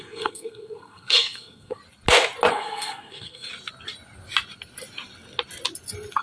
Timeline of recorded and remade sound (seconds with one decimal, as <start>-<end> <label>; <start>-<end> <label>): 0.0-1.8 remade; 1.8-2.5 recorded; 2.5-3.5 remade; 3.5-6.2 recorded